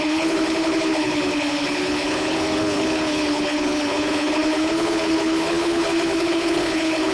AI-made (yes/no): yes